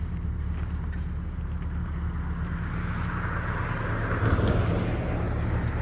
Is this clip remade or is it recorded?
recorded